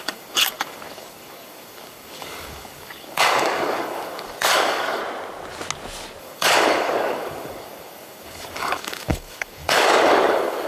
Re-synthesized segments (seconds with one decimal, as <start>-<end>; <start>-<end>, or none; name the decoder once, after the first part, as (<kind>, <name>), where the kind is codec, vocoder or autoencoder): 0.0-5.0 (codec, DAC); 6.2-10.7

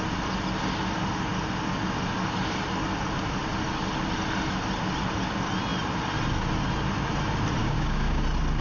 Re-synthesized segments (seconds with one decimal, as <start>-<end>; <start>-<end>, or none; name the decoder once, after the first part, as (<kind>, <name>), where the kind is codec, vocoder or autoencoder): 7.6-8.2 (codec, DAC)

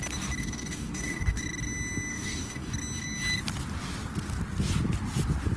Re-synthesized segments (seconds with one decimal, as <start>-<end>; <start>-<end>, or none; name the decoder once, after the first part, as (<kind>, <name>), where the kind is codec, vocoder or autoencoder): 0.4-1.4 (codec, DAC); 2.1-2.7

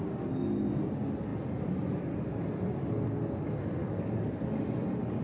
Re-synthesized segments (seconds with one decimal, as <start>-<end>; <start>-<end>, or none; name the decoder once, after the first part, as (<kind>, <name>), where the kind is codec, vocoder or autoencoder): 3.8-4.5 (codec, DAC)

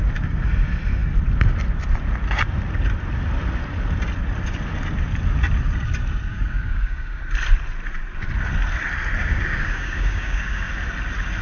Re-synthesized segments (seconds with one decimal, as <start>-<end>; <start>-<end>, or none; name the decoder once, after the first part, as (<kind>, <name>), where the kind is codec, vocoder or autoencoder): 6.3-7.2 (codec, DAC); 9.2-10.7

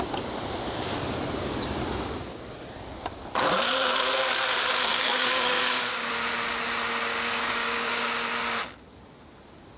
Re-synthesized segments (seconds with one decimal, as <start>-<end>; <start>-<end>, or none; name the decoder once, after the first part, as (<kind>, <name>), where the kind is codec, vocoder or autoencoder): 4.9-6.1 (codec, DAC); 7.1-8.0

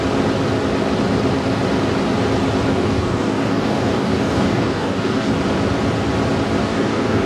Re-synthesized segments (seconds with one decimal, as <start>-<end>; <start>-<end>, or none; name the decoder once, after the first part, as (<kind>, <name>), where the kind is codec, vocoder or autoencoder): 2.7-5.3 (codec, DAC); 6.6-7.3

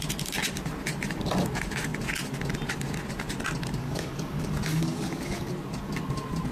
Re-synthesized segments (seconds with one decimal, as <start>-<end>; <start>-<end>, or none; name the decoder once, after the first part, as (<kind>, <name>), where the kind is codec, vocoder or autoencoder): 3.8-5.5 (codec, DAC)